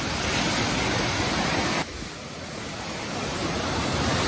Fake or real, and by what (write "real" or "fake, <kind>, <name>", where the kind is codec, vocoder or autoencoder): real